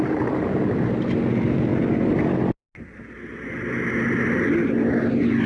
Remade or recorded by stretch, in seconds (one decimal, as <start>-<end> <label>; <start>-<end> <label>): 0.0-5.5 recorded